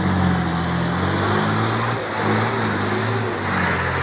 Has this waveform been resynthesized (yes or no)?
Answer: no